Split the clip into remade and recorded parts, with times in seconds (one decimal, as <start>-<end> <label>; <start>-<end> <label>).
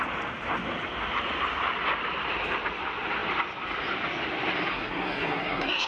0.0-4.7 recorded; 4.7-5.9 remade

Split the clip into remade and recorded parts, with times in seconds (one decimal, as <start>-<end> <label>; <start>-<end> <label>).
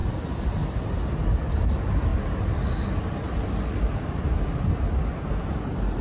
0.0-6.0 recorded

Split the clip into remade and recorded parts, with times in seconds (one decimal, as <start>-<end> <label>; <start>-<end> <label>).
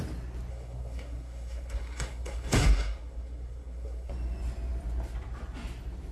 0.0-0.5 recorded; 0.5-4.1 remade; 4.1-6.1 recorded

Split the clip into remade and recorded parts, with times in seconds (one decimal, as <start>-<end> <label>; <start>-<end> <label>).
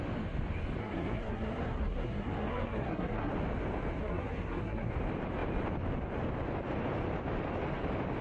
0.0-0.8 recorded; 0.8-3.3 remade; 3.3-4.0 recorded; 4.0-4.9 remade; 4.9-8.2 recorded